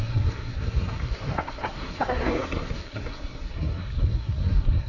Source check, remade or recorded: remade